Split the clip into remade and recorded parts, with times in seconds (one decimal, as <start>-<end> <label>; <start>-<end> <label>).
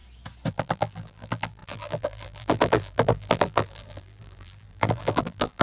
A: 0.0-0.5 recorded; 0.5-5.6 remade